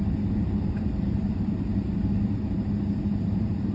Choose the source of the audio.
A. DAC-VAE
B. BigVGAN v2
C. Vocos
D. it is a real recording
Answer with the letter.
B